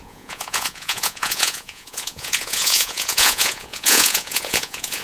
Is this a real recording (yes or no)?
no